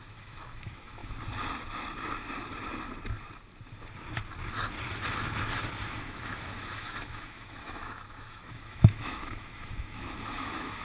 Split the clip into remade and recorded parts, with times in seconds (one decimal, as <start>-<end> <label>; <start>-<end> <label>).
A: 0.0-1.0 remade; 1.0-5.9 recorded; 5.9-10.8 remade